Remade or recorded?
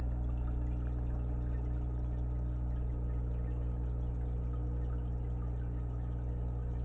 recorded